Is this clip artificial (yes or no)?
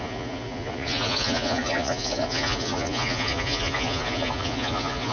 yes